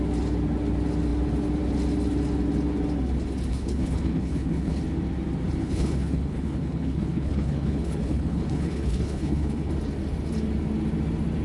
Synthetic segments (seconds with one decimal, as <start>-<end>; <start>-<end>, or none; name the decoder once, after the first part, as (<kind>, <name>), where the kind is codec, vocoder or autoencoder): 3.5-4.8 (codec, HILCodec); 5.6-9.7

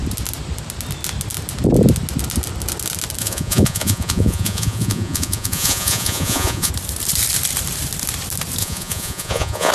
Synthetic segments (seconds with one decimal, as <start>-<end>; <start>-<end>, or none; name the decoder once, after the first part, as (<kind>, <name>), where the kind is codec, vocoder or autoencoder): 3.2-6.7 (vocoder, Vocos); 8.6-9.7

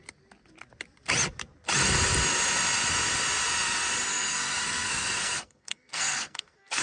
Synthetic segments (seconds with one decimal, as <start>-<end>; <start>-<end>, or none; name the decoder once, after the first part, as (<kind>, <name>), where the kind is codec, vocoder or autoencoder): 4.1-6.8 (codec, SNAC)

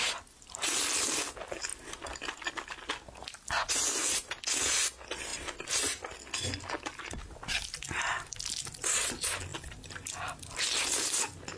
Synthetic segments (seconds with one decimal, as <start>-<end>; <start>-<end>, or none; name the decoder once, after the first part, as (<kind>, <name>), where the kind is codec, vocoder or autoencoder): none

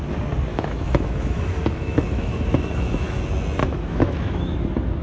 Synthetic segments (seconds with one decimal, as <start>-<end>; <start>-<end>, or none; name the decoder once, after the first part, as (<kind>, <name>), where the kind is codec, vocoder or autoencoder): 0.5-3.2 (autoencoder, DAC-VAE); 3.6-4.6